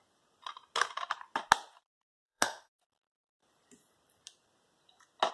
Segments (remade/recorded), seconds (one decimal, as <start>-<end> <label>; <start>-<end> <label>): 0.0-2.2 recorded; 2.2-2.8 remade; 2.8-5.3 recorded